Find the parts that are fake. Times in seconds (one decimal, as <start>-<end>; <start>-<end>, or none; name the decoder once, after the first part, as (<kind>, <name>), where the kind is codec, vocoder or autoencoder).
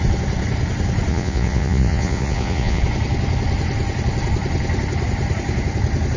1.1-2.8 (vocoder, Vocos)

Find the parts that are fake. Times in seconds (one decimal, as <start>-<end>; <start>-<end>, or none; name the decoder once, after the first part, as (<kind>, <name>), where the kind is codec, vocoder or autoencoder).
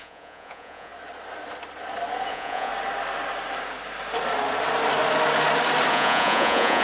0.0-0.9 (vocoder, Vocos); 2.3-2.7; 5.9-6.8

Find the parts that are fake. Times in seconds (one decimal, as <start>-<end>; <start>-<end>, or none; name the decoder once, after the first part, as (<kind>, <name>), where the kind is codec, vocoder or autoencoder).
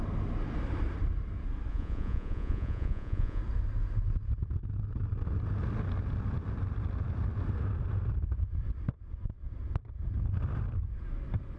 1.7-3.4 (vocoder, Vocos)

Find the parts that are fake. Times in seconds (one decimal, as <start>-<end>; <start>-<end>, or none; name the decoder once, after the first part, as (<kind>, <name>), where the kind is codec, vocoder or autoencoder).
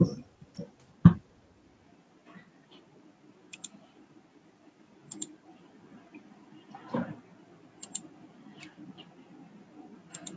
none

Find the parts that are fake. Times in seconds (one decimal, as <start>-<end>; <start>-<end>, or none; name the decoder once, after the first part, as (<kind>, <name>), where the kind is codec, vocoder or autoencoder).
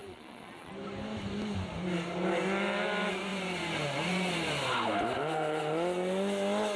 0.0-0.7 (vocoder, Vocos)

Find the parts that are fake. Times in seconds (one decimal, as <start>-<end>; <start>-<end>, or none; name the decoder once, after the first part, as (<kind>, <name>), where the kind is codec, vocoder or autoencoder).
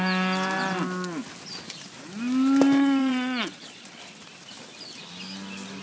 3.0-4.0 (vocoder, Vocos)